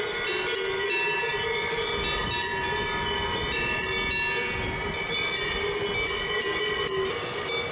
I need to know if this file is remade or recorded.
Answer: recorded